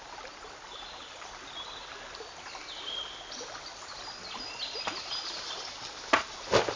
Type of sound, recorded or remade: recorded